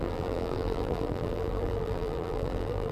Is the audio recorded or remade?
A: remade